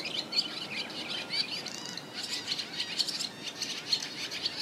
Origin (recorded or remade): recorded